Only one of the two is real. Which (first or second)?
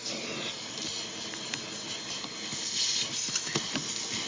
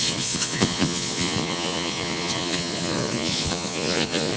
first